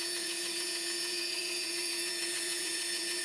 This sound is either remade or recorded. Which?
remade